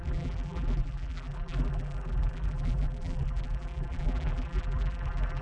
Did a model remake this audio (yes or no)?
yes